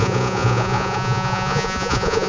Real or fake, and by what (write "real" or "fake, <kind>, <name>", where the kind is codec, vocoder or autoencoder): fake, vocoder, Vocos